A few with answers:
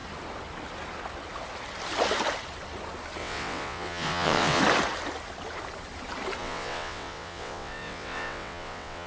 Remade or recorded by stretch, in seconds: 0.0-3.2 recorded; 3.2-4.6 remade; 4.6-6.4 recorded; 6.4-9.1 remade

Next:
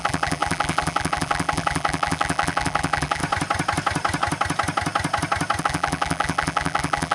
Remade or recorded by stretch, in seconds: 0.0-3.2 remade; 3.2-5.6 recorded; 5.6-7.1 remade

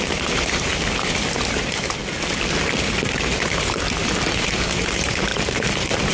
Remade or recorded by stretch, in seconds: 0.0-0.7 remade; 0.7-1.5 recorded; 1.5-2.0 remade; 2.0-4.8 recorded; 4.8-6.1 remade

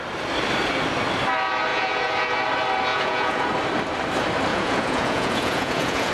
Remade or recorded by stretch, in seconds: 0.0-1.7 recorded; 1.7-2.3 remade; 2.3-2.9 recorded; 2.9-3.5 remade; 3.5-4.5 recorded; 4.5-6.1 remade

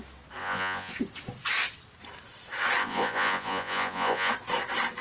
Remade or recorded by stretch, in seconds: 0.0-0.4 recorded; 0.4-0.9 remade; 0.9-2.8 recorded; 2.8-4.3 remade; 4.3-5.0 recorded

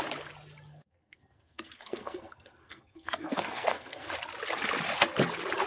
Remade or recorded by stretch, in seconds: 0.0-0.7 recorded; 0.7-4.1 remade; 4.1-5.7 recorded